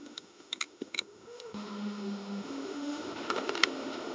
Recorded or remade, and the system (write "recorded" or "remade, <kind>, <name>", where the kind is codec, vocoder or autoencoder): remade, autoencoder, DAC-VAE